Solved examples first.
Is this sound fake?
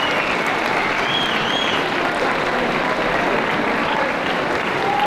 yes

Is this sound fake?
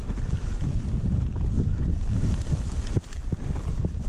no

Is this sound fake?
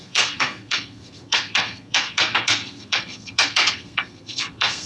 yes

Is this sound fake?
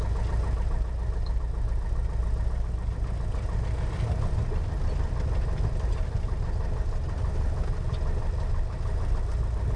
no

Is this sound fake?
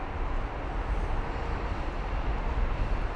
no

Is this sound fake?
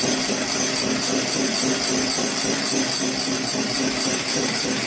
no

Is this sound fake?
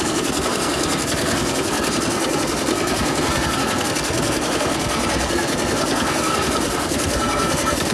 yes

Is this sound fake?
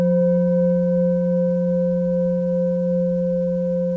no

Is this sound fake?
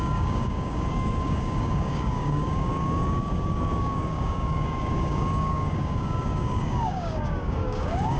yes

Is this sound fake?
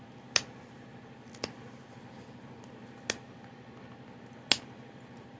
no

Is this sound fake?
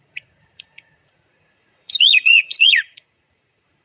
yes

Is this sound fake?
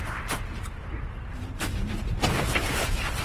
yes